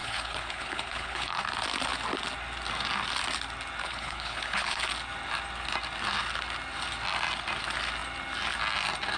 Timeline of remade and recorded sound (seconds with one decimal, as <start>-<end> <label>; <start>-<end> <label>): 0.0-1.4 remade; 1.4-3.8 recorded; 3.8-4.8 remade; 4.8-9.2 recorded